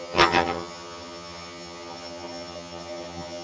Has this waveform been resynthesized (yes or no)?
yes